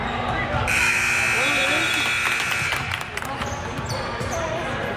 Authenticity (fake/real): real